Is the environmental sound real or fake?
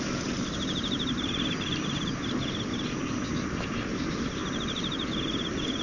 real